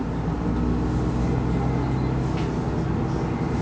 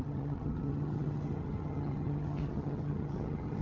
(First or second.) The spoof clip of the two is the second